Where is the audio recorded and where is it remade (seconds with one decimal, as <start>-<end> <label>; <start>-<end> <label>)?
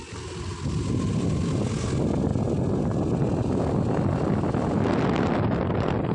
0.0-6.1 recorded